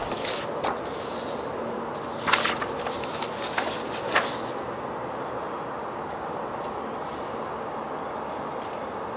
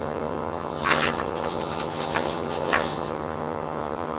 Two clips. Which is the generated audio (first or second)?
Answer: second